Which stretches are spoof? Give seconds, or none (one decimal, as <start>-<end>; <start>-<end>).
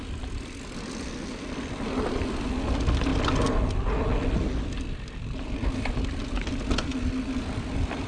none